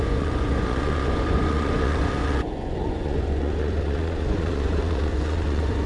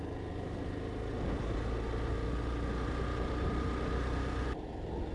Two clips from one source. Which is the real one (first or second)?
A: second